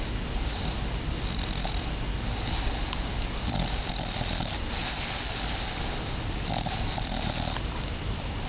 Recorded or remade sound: recorded